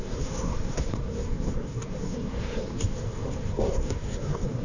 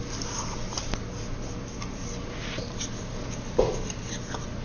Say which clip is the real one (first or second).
second